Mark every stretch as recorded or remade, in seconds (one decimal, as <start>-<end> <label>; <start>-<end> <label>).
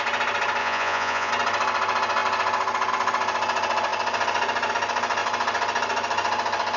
0.0-0.6 recorded; 0.6-1.3 remade; 1.3-6.8 recorded